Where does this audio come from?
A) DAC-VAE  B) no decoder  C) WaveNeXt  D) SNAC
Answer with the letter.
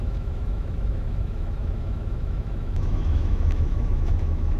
A